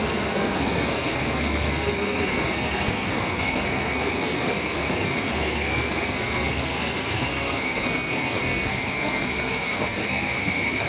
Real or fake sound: fake